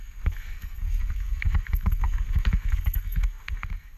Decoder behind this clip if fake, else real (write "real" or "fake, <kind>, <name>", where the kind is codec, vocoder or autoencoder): fake, codec, SNAC